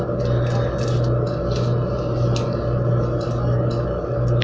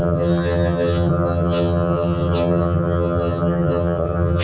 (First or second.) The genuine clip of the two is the first